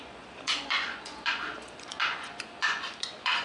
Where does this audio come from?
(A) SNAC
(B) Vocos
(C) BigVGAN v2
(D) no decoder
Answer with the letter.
B